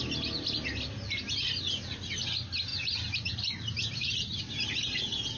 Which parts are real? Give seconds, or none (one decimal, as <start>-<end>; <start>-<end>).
0.0-2.7; 4.4-5.4